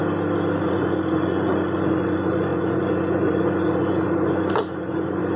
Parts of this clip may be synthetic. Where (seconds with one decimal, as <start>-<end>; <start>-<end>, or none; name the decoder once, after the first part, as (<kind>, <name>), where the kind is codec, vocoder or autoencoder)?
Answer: 0.6-5.4 (vocoder, Vocos)